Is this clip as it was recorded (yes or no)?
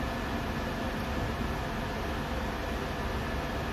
yes